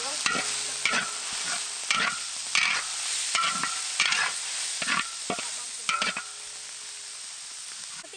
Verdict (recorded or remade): recorded